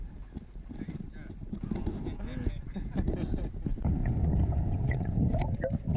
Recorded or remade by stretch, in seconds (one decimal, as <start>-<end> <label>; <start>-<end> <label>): 0.0-4.0 recorded; 4.0-5.4 remade; 5.4-6.0 recorded